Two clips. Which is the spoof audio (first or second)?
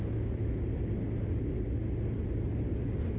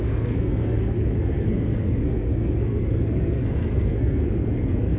second